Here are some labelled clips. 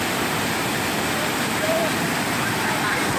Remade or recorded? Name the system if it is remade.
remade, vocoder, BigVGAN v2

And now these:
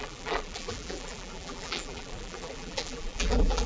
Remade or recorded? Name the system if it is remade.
remade, vocoder, BigVGAN v2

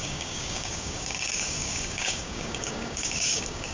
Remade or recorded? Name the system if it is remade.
remade, codec, DAC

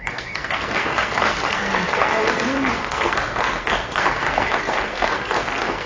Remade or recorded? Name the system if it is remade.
remade, codec, SNAC